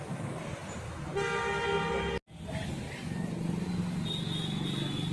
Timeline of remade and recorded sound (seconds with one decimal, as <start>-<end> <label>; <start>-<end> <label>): 0.0-5.1 recorded